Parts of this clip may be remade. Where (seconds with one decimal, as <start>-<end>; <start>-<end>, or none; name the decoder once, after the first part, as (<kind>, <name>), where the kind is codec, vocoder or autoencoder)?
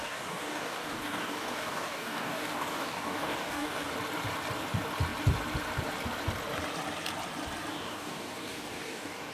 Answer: 0.0-3.9 (codec, DAC); 7.7-9.3